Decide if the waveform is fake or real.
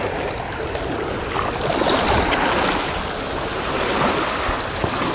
real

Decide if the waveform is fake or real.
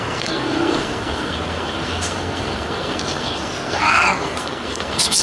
fake